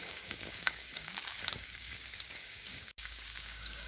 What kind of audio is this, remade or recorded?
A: remade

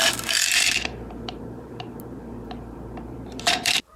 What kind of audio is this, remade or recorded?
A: remade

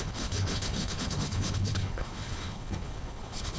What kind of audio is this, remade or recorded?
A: remade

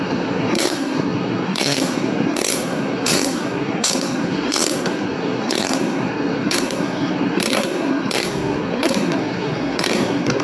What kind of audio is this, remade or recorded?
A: remade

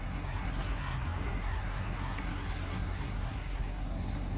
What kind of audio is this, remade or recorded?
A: remade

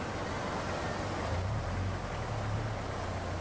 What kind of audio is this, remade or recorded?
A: recorded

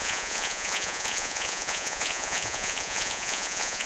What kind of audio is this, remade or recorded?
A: remade